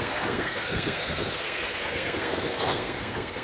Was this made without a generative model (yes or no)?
no